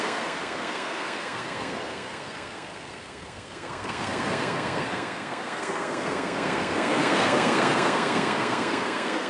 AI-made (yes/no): yes